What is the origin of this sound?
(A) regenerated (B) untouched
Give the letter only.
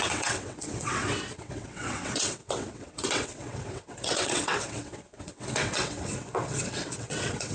A